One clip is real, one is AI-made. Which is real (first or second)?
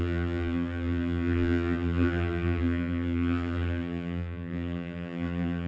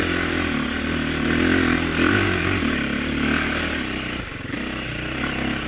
second